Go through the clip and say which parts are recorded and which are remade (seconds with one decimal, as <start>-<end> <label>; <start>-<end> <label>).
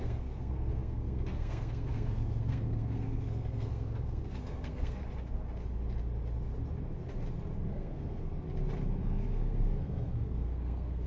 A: 0.0-5.0 remade; 5.0-7.7 recorded; 7.7-8.3 remade; 8.3-9.0 recorded; 9.0-11.1 remade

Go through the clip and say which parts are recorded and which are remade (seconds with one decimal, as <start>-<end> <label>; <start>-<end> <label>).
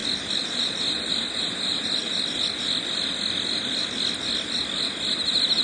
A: 0.0-5.6 recorded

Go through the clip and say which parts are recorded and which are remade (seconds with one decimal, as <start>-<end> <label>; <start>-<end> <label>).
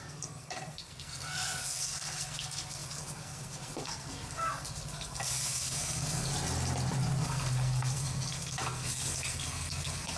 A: 0.0-6.3 remade; 6.3-7.2 recorded; 7.2-10.2 remade